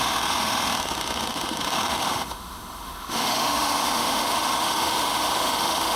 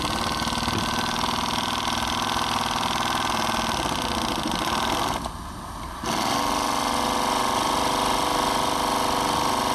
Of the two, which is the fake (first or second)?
first